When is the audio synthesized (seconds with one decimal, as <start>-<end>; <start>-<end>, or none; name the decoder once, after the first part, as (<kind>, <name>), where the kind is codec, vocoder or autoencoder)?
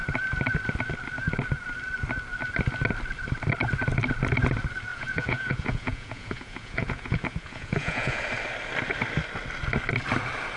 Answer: 4.9-8.2 (vocoder, Vocos)